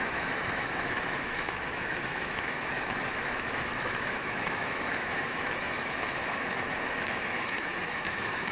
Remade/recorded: remade